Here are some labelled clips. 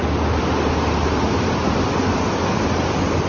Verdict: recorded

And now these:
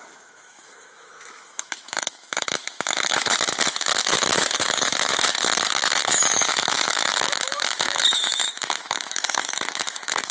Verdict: remade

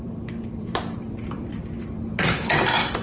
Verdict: remade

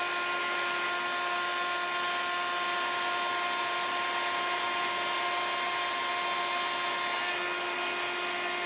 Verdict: recorded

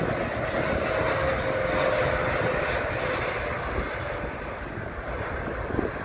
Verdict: recorded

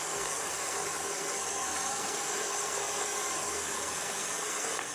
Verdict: remade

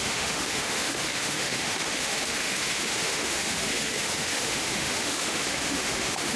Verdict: remade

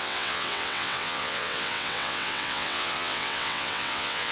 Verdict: remade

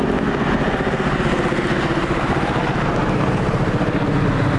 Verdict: recorded